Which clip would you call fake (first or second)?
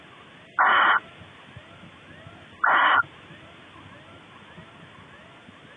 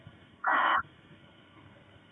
second